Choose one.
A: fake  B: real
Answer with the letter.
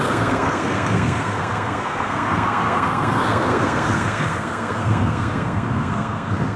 A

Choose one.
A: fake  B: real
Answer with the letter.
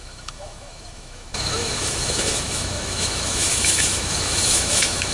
A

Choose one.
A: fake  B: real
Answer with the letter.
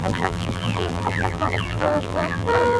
A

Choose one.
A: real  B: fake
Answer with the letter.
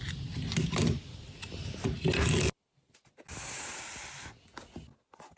A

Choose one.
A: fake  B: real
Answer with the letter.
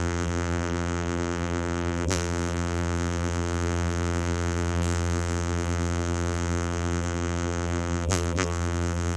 A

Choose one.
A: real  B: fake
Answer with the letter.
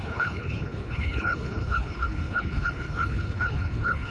B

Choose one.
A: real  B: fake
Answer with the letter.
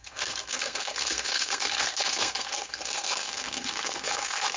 B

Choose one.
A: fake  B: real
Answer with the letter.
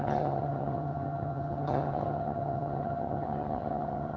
A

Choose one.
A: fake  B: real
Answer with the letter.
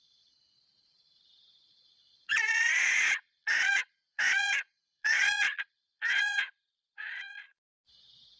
A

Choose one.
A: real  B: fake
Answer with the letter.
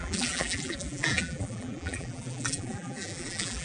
B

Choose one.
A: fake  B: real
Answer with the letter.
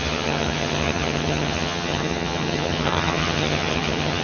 A